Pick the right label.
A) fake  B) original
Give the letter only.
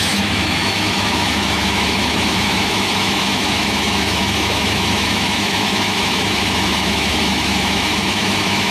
A